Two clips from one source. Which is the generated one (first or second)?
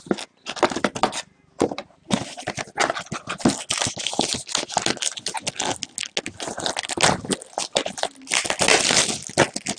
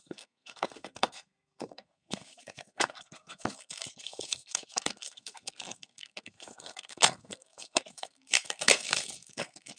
second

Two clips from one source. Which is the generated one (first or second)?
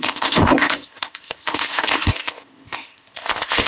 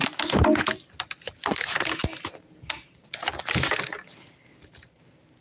first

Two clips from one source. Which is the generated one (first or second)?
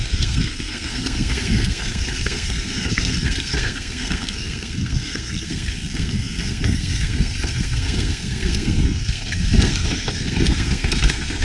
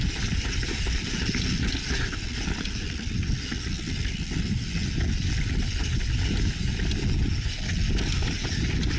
first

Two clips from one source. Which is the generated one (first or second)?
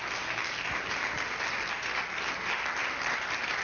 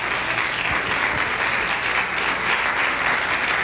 first